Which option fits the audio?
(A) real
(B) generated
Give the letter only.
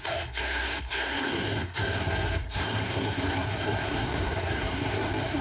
B